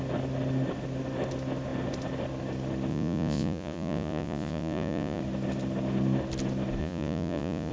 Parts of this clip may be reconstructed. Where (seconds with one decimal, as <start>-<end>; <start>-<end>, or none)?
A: 2.9-5.2; 6.8-7.7